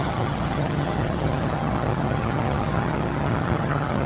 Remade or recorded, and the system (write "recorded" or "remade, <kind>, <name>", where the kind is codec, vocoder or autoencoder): remade, vocoder, HiFi-GAN